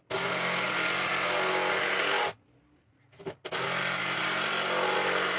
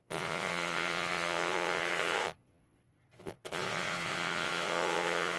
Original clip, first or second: first